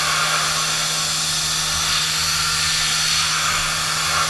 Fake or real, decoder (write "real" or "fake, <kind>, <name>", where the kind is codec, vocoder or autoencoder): real